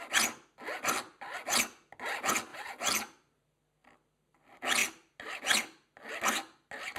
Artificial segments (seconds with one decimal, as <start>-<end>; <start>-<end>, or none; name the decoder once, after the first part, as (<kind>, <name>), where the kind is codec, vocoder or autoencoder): 2.5-3.4 (vocoder, BigVGAN v2)